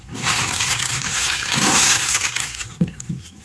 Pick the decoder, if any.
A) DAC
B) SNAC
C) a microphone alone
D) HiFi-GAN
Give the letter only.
B